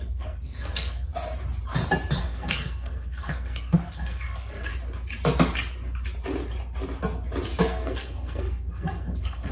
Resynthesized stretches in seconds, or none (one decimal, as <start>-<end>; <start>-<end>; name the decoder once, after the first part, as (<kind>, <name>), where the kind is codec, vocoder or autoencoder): 0.0-1.1 (codec, SNAC); 2.2-4.7; 7.6-9.5